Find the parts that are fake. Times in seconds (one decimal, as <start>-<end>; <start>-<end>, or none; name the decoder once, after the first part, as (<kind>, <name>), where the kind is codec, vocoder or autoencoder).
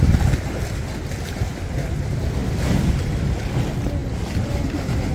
none